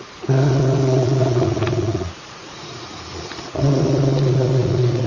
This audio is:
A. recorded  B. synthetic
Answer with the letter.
B